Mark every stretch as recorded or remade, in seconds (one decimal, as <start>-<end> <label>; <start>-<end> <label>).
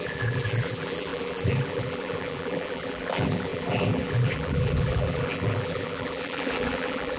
0.0-7.2 remade